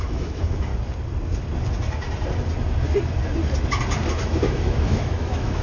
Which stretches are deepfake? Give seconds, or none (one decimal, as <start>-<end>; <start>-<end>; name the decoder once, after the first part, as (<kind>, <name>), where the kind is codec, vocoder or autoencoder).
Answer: 0.0-0.7 (autoencoder, DAC-VAE); 4.1-5.6